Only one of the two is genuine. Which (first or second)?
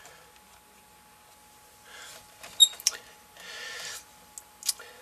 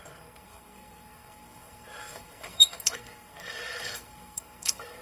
first